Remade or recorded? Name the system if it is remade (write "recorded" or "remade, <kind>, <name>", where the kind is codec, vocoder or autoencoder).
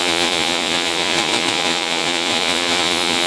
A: remade, vocoder, Vocos